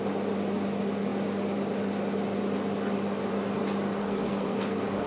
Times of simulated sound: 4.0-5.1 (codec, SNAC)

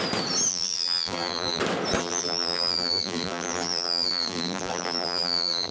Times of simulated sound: 0.5-1.6 (vocoder, BigVGAN v2); 2.0-5.7

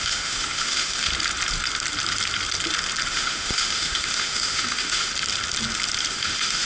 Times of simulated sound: 0.0-1.1 (autoencoder, DAC-VAE); 3.1-5.1; 6.1-6.7

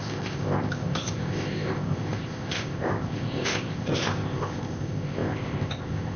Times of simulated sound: 0.0-6.2 (codec, ZipCodec)

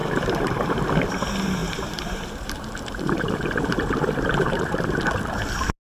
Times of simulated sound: 0.0-0.9 (vocoder, BigVGAN v2); 1.6-5.2

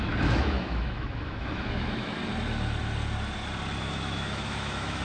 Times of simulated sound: 0.0-2.2 (autoencoder, DAC-VAE); 3.8-5.0

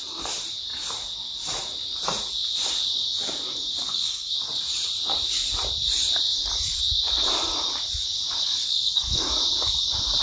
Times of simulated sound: 3.8-4.3 (codec, SNAC); 8.4-9.3

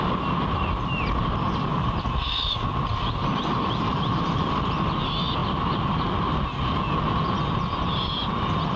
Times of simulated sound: none